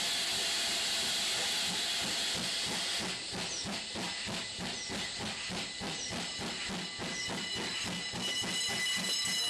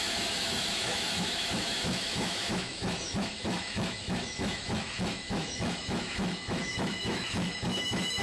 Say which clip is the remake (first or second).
second